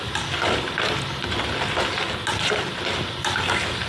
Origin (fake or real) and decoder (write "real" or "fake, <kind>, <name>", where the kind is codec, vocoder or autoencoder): real